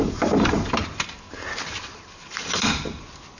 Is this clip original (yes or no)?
yes